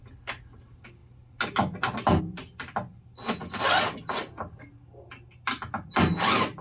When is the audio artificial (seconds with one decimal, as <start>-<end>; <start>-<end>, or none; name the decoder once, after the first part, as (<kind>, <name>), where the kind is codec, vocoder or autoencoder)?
none